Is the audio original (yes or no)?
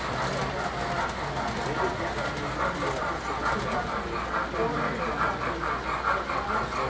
yes